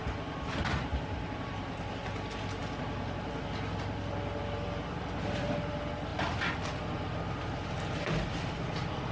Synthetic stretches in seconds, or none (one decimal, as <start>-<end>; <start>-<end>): none